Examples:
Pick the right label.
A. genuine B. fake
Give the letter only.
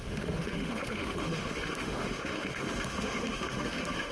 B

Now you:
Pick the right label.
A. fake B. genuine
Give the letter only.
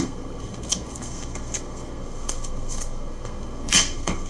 A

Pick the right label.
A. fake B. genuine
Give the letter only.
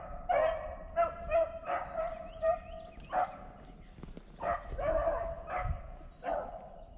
B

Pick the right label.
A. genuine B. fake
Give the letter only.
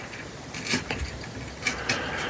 A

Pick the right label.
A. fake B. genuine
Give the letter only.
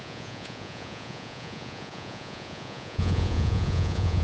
A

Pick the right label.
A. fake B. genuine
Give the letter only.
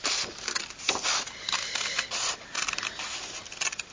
B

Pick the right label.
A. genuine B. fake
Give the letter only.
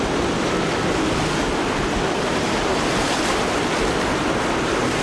A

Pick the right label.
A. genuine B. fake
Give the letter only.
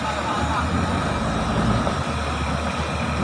A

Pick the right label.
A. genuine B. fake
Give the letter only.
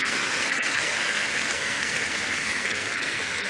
B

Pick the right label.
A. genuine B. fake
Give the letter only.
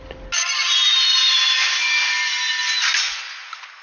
A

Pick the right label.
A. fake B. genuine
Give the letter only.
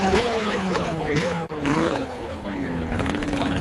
A